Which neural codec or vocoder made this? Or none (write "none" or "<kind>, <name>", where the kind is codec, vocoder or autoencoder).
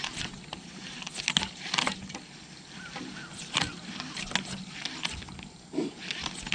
none